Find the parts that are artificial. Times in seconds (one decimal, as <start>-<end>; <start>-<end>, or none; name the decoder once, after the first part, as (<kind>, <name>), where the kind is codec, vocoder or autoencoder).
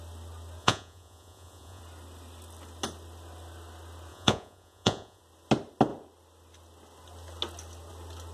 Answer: 0.6-1.8 (vocoder, Vocos); 4.1-5.2